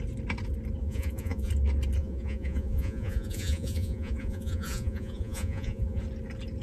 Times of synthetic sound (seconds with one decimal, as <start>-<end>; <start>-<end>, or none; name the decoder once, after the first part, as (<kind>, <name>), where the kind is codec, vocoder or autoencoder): 0.8-1.5 (vocoder, Vocos); 2.0-6.0